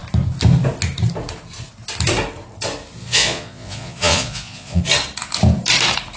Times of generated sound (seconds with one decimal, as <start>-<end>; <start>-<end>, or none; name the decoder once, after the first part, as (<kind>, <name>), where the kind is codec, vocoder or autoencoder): 3.0-4.8 (vocoder, Vocos)